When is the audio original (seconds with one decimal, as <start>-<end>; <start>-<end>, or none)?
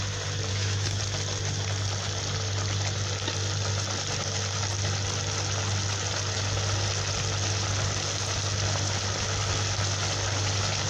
0.0-0.5; 1.0-10.9